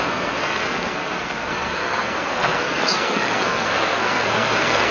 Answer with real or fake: fake